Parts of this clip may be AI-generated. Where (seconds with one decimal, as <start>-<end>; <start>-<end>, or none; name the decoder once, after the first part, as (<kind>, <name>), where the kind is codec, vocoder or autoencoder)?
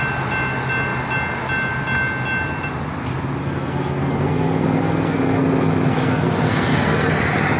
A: 3.4-7.1 (codec, SNAC)